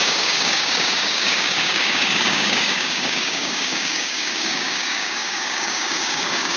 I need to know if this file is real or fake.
fake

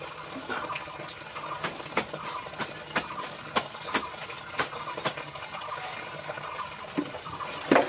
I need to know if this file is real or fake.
real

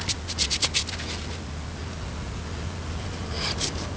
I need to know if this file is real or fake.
real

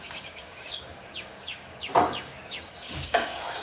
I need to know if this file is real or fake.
fake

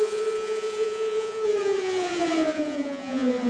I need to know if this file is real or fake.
fake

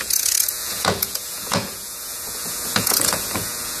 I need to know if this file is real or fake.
fake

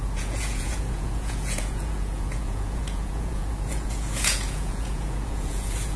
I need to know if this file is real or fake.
fake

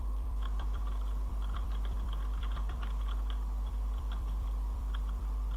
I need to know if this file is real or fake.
fake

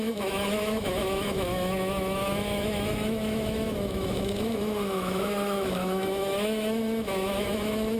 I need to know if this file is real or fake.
fake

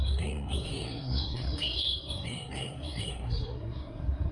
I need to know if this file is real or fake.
fake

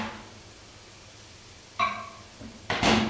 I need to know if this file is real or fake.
real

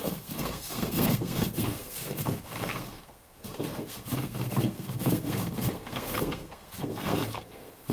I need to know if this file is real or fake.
fake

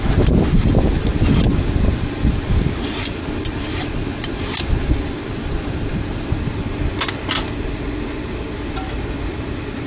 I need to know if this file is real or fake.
real